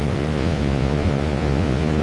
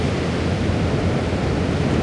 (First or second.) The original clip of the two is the second